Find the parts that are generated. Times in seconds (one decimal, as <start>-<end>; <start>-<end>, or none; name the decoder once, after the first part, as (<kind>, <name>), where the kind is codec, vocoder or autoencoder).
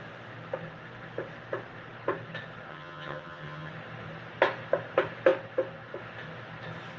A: 2.7-3.7 (vocoder, HiFi-GAN)